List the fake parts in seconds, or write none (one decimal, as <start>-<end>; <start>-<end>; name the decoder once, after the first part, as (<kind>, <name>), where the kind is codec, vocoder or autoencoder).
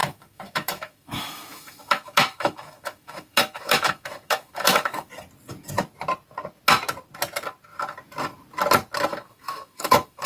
0.0-5.1 (autoencoder, DAC-VAE); 9.1-10.3